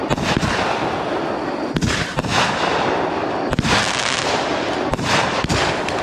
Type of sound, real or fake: real